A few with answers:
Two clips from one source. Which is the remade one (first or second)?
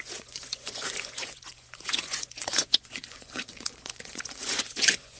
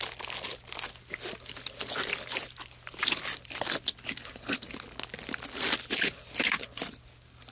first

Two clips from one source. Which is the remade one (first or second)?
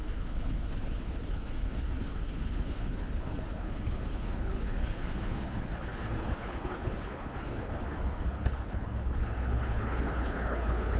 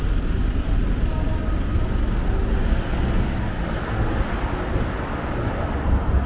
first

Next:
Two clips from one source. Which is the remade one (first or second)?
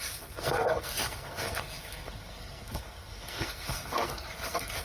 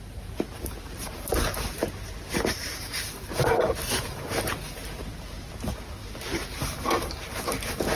first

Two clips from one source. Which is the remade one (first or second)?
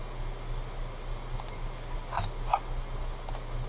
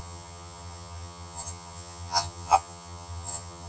second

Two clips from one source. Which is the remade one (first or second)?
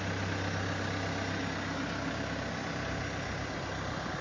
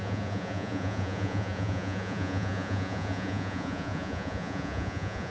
second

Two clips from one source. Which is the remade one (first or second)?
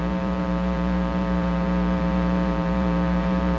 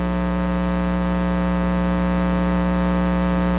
first